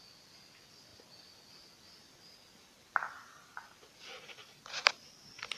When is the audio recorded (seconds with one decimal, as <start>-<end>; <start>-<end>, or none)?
0.0-5.6